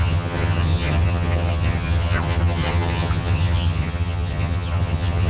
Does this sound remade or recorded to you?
remade